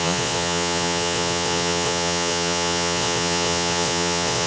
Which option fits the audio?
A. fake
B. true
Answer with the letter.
A